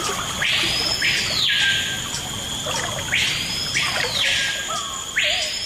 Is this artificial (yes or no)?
no